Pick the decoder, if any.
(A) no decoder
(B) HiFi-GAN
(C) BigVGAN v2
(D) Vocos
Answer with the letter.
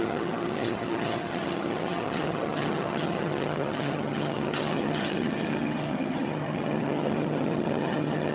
B